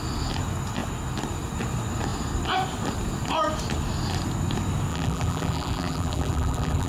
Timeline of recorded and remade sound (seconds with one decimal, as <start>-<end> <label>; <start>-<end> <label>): 0.0-4.9 recorded; 4.9-6.9 remade